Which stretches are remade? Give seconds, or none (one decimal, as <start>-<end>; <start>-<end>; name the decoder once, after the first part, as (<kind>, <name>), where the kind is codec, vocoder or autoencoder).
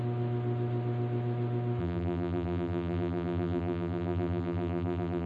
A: 1.8-5.3 (vocoder, BigVGAN v2)